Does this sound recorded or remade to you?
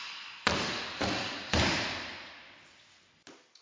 recorded